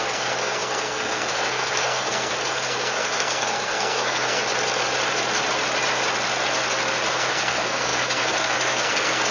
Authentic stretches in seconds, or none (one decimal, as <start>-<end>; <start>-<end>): 4.4-7.1